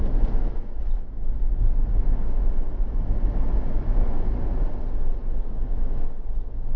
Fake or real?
real